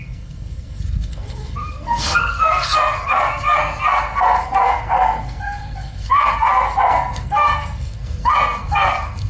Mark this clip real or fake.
fake